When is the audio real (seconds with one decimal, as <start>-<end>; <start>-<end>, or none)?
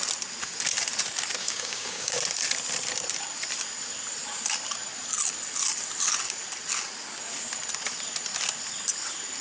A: 0.0-1.4; 2.2-9.4